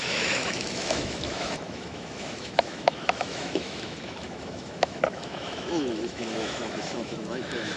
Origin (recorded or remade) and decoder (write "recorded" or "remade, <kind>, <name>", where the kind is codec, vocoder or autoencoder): remade, autoencoder, DAC-VAE